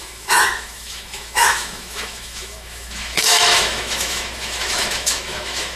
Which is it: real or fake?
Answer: fake